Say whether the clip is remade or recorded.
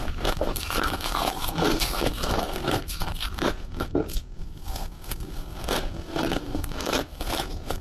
remade